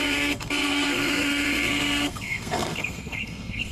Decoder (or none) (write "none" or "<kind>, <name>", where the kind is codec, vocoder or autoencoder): codec, SNAC